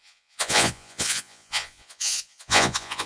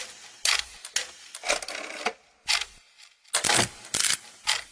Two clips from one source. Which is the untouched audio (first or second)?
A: second